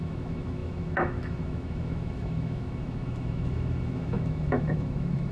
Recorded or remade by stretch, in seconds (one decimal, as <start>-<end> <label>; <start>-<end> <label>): 0.0-5.3 remade